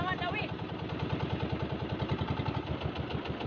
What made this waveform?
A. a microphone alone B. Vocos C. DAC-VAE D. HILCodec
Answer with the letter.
A